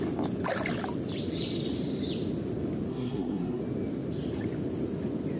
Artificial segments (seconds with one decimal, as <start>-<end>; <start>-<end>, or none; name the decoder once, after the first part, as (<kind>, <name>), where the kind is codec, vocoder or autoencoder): 2.9-3.6 (codec, SNAC)